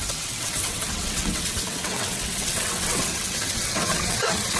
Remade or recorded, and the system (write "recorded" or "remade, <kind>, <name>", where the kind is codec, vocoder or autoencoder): remade, vocoder, WaveNeXt